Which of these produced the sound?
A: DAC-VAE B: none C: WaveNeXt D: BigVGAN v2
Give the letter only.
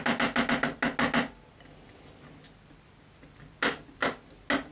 B